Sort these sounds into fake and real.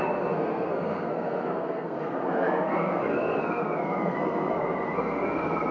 fake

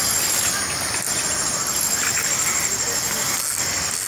real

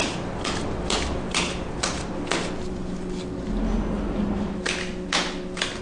real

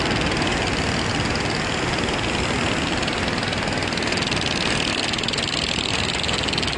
real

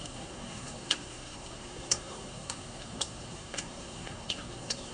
fake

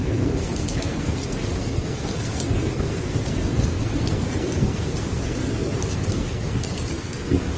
fake